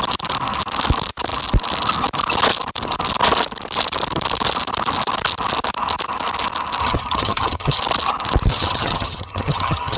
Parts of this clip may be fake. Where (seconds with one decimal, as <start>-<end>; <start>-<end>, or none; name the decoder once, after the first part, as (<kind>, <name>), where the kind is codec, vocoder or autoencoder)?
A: 6.8-7.8 (vocoder, HiFi-GAN); 8.5-10.0